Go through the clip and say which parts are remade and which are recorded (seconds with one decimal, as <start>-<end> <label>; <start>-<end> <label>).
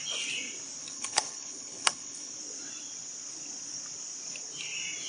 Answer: 0.0-0.8 recorded; 0.8-2.3 remade; 2.3-5.1 recorded